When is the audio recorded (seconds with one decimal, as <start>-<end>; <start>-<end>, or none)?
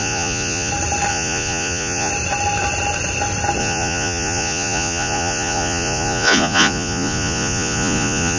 0.7-1.1; 2.1-3.6